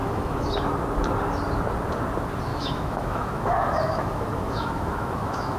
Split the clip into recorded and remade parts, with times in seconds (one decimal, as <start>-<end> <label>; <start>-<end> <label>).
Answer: 0.0-0.5 remade; 0.5-2.5 recorded; 2.5-5.6 remade